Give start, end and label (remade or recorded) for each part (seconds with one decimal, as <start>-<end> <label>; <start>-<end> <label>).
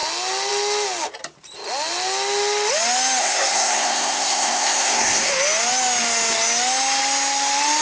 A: 0.0-3.2 recorded; 3.2-5.3 remade; 5.3-7.8 recorded